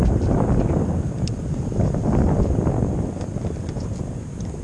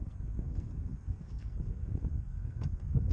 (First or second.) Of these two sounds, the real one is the first